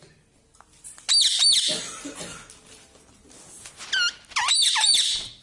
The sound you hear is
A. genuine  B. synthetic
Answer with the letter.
A